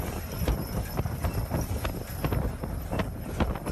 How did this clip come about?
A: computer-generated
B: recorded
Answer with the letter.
B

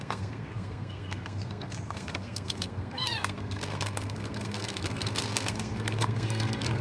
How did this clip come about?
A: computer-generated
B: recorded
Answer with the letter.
A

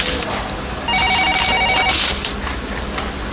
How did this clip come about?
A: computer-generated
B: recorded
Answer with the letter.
B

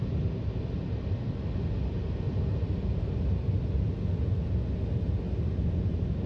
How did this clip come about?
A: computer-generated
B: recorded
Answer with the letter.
B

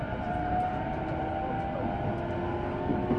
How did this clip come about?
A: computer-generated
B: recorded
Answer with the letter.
B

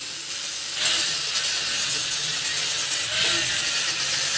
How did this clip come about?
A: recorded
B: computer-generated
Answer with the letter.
A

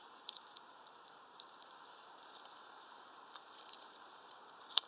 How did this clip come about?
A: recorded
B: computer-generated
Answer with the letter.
B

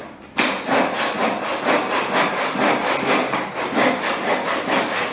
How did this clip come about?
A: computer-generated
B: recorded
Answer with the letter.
B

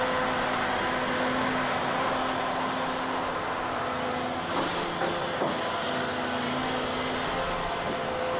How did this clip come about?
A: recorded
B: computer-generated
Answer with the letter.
A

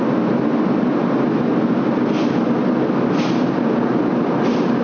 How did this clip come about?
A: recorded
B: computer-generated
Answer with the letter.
A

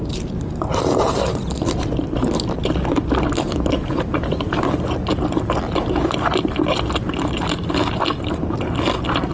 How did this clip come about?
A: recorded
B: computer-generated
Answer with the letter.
A